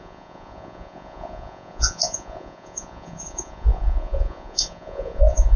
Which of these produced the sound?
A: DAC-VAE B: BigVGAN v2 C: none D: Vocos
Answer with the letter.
D